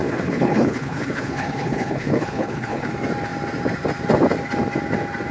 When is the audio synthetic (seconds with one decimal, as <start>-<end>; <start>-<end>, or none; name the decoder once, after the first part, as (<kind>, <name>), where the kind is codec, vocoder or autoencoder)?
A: 0.0-2.9 (codec, HILCodec)